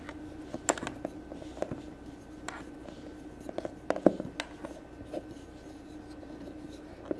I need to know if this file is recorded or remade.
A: recorded